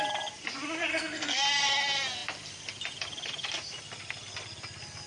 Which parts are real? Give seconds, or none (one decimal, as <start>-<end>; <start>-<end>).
0.0-0.9; 1.4-5.1